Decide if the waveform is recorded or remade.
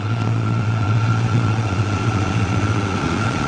remade